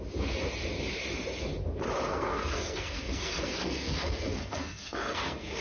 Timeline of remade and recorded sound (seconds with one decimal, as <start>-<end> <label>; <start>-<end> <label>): 0.0-2.1 recorded; 2.1-5.6 remade